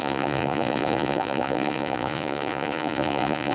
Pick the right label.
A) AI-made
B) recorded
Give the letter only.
A